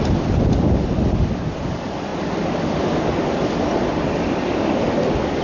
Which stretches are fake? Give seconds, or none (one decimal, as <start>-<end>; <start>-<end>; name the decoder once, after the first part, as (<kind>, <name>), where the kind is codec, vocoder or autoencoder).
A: none